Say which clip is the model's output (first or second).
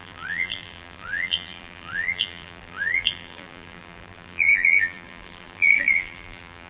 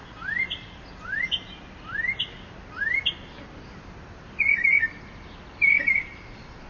first